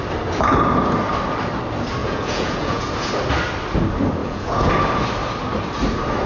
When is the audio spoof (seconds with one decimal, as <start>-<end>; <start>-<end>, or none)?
2.0-2.9; 4.2-4.7